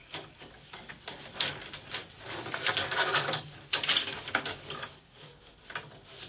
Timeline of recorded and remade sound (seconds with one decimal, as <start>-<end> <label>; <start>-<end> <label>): 0.0-0.9 remade; 0.9-2.0 recorded; 2.0-5.4 remade; 5.4-6.3 recorded